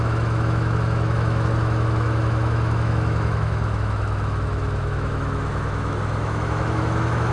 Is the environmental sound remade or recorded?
remade